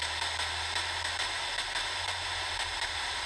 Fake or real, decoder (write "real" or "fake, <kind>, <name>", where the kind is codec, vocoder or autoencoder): real